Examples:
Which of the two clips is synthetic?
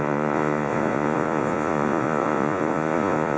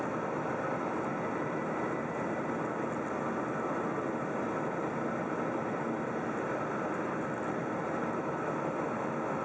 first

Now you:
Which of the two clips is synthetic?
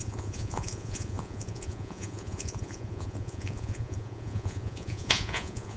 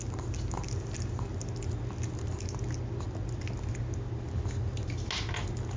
first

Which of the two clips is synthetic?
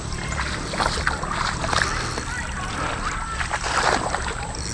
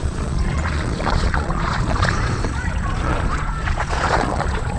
second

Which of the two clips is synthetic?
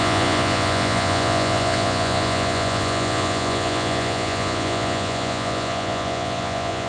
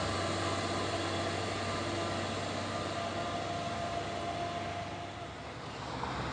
first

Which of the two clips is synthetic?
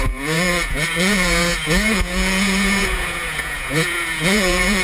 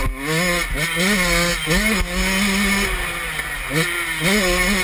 first